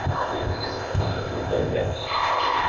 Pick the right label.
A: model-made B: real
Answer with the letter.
A